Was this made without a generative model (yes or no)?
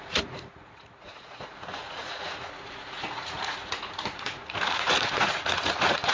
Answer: no